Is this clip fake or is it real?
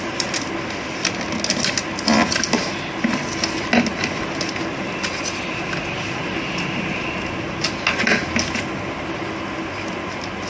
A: real